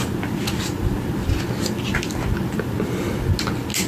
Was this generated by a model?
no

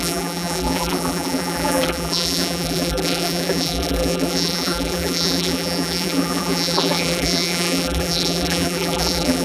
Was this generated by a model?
yes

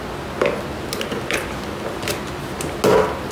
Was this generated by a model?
no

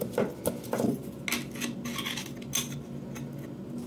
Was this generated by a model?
no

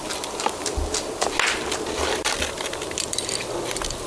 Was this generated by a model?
no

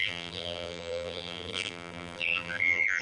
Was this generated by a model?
yes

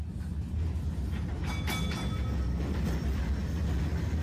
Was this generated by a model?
no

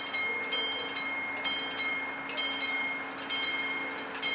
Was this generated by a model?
no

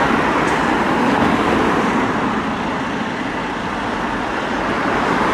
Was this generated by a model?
yes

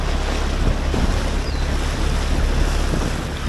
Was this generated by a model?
no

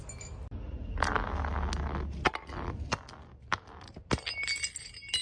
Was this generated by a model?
no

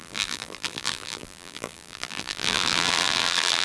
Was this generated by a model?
yes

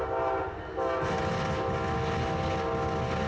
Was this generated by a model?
no